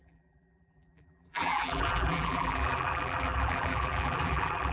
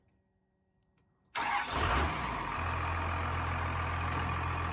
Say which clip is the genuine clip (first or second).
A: second